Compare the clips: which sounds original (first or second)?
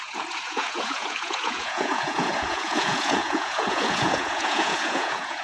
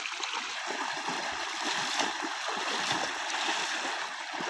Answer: second